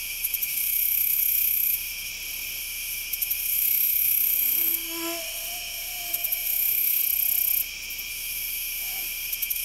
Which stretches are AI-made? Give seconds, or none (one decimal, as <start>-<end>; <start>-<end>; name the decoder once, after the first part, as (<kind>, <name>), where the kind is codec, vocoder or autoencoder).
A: 0.0-2.1 (autoencoder, DAC-VAE); 2.6-7.0; 8.1-9.6